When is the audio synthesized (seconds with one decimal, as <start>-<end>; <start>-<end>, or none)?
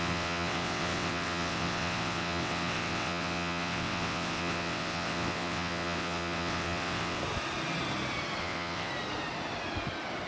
0.0-7.2; 8.4-8.9